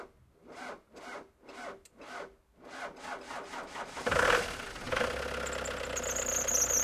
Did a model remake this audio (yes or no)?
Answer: no